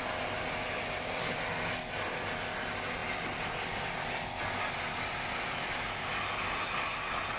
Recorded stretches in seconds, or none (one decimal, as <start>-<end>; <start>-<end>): 0.0-7.4